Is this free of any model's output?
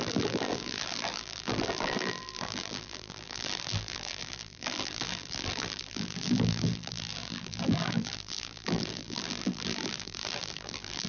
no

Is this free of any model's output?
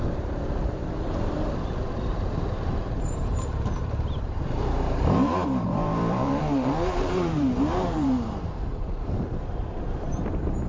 no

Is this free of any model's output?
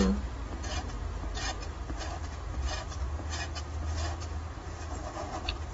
yes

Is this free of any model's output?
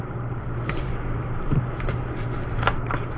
no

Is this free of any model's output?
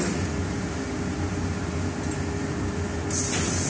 yes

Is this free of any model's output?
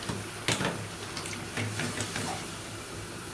yes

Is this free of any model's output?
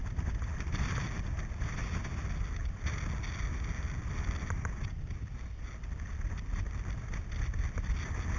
yes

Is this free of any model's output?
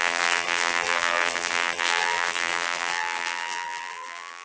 no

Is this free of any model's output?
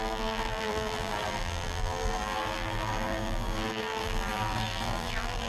no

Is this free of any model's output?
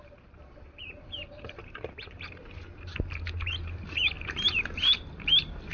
no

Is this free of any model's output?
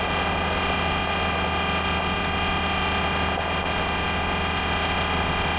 yes